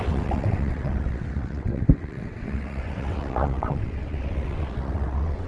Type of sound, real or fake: fake